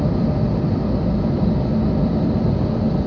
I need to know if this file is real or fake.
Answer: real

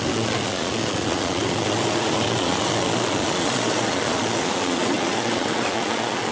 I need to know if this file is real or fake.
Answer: fake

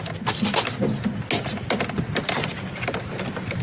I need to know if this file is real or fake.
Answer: real